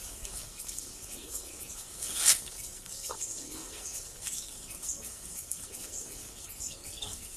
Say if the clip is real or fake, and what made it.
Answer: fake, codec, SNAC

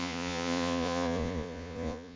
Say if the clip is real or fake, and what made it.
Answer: fake, vocoder, Vocos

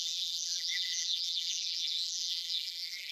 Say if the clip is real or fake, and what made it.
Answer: fake, vocoder, BigVGAN v2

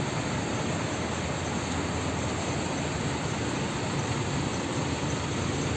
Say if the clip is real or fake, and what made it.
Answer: real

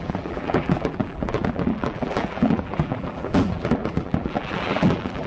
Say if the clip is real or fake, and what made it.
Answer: fake, vocoder, BigVGAN v2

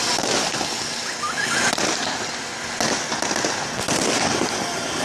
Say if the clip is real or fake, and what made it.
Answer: real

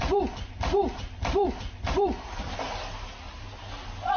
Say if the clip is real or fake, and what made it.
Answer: real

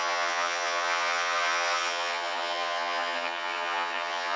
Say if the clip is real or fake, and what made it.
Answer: fake, vocoder, HiFi-GAN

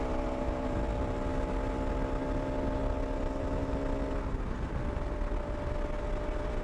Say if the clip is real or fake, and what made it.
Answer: real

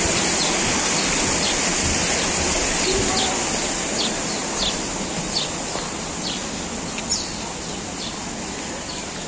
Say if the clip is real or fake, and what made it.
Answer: real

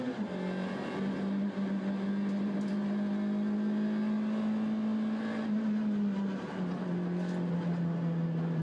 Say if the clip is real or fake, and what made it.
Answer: real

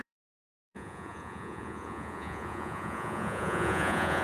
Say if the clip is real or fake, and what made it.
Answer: fake, vocoder, Vocos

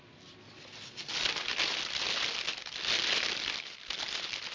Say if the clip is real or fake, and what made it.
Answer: real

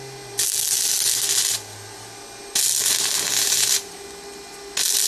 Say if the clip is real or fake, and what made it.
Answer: real